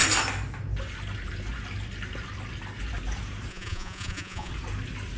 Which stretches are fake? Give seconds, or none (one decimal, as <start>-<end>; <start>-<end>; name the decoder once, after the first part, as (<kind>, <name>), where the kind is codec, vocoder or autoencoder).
3.5-4.5 (vocoder, Vocos)